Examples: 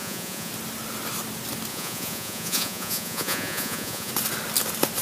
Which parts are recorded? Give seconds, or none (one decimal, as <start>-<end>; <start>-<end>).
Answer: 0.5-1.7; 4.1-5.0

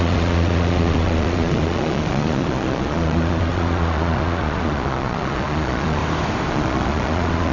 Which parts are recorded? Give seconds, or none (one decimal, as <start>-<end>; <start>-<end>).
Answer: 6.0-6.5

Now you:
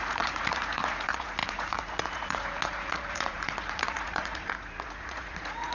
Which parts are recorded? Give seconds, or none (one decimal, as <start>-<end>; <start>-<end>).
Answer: none

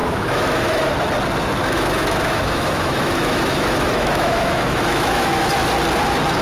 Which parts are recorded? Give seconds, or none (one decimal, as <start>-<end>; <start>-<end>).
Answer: 0.9-1.6; 5.4-6.4

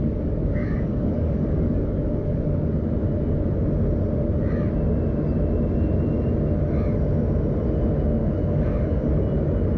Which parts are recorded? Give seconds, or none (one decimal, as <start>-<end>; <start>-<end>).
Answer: 2.7-8.2; 9.2-9.8

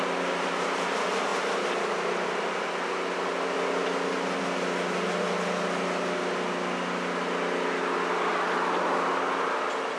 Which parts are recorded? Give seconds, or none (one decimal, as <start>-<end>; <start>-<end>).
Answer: 0.0-10.0

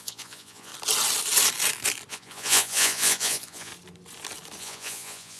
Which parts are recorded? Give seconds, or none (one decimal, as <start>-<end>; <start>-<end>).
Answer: 0.7-2.1; 3.7-4.6